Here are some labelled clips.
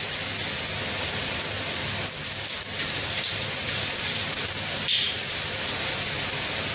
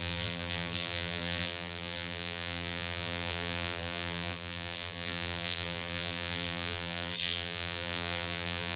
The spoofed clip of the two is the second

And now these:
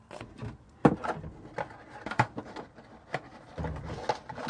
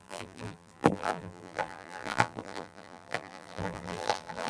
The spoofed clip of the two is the second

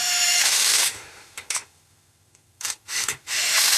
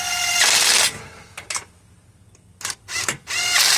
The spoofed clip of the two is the first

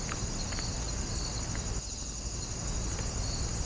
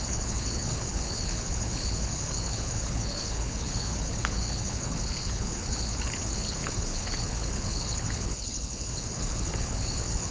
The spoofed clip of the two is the second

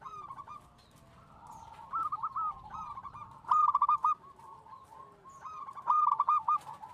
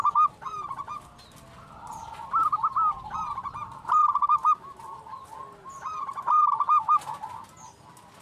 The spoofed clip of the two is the first